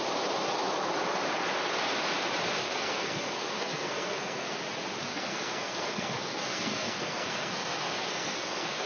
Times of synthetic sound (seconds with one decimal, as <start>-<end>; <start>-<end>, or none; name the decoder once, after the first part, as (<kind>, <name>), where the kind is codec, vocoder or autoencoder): 2.6-4.6 (codec, SNAC); 5.1-8.9